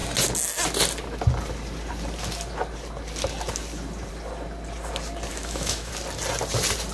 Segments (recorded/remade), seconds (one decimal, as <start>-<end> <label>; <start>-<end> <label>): 0.0-5.3 recorded; 5.3-5.9 remade; 5.9-6.9 recorded